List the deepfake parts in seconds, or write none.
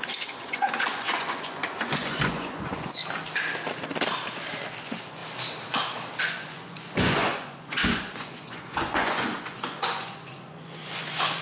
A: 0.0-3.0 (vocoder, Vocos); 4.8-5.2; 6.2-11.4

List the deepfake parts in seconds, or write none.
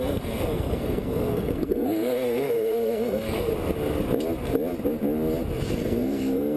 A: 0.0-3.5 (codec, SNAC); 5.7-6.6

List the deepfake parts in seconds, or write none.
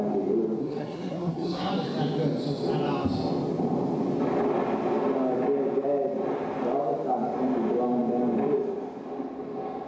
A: 0.6-1.7 (codec, SNAC)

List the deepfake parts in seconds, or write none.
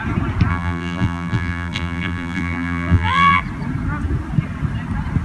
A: 0.5-3.4 (vocoder, BigVGAN v2)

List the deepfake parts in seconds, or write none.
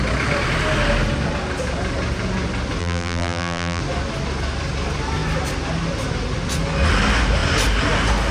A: 2.8-3.8 (vocoder, BigVGAN v2)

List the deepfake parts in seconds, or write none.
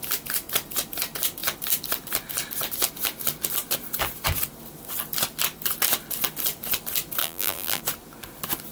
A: 7.2-7.8 (vocoder, BigVGAN v2)